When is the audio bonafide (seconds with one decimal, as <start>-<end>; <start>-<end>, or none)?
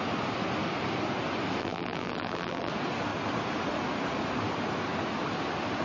0.0-1.6; 2.7-5.8